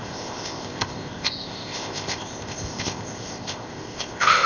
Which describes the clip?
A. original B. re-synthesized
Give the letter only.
B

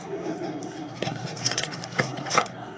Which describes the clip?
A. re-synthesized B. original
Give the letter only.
A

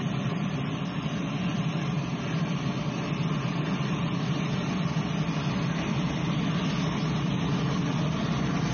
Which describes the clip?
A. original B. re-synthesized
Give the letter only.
A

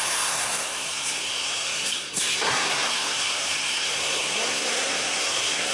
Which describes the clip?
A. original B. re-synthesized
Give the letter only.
B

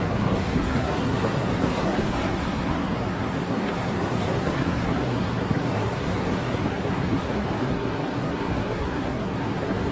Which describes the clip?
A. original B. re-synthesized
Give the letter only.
B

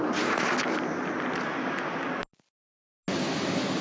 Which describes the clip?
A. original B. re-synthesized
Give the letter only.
A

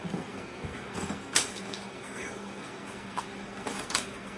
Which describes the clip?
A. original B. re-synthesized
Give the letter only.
B